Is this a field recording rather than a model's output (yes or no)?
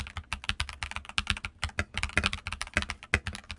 yes